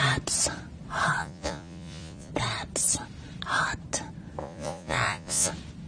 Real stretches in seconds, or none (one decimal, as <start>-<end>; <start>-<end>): 0.0-1.2; 2.3-4.4; 5.5-5.9